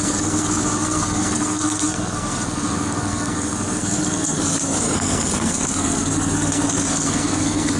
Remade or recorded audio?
remade